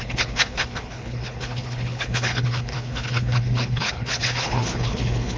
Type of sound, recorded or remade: remade